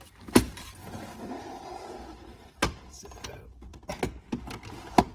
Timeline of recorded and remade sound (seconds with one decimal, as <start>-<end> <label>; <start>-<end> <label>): 0.0-0.8 remade; 0.8-1.4 recorded; 1.4-3.7 remade; 3.7-5.1 recorded